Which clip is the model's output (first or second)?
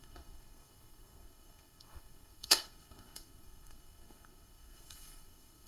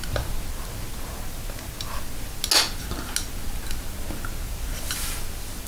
first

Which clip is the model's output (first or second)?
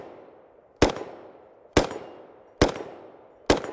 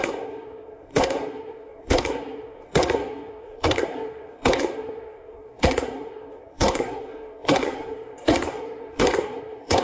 second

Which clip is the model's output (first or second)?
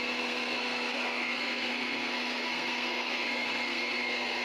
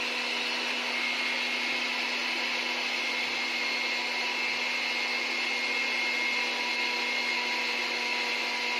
first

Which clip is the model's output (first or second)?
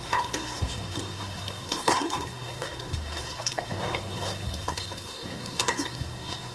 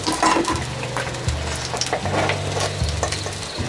first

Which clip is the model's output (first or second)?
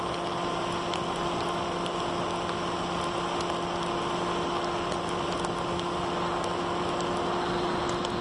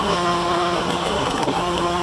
second